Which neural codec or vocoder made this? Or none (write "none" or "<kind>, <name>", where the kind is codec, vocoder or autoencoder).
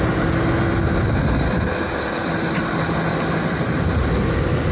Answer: none